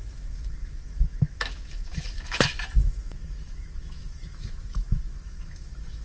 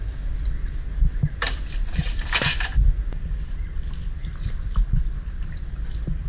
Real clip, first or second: second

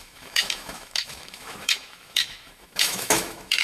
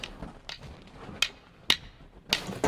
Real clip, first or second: second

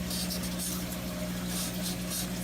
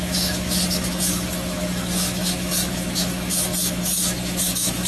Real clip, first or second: first